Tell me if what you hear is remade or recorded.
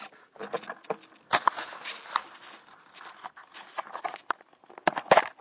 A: recorded